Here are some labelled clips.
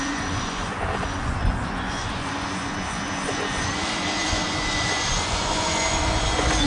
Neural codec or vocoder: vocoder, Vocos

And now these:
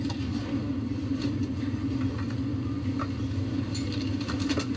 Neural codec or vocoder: none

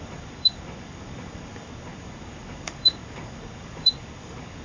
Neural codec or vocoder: codec, DAC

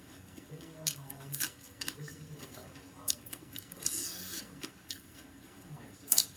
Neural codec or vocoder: codec, SNAC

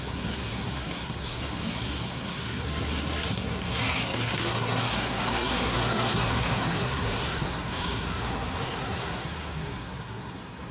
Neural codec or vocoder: codec, SNAC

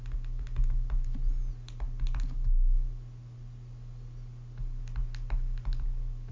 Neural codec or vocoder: none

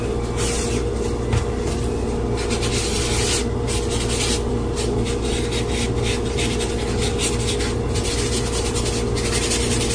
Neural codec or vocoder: none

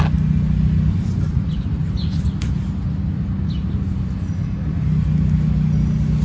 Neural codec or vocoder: none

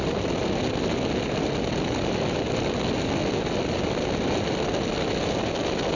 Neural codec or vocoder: none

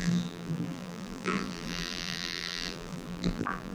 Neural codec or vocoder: vocoder, BigVGAN v2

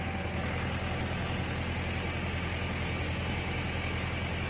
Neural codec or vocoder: none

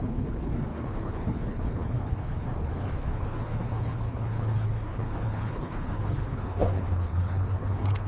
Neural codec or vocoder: codec, HILCodec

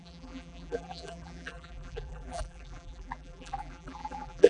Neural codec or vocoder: vocoder, BigVGAN v2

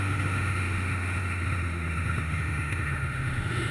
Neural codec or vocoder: autoencoder, DAC-VAE